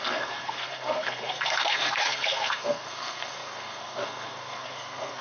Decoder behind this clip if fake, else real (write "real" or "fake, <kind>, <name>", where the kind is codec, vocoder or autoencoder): fake, codec, SNAC